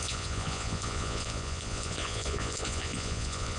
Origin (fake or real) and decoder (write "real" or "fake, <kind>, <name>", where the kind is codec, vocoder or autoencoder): fake, vocoder, Vocos